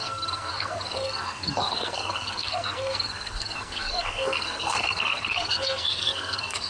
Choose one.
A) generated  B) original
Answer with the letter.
A